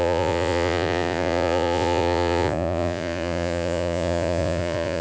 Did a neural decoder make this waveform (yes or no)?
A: yes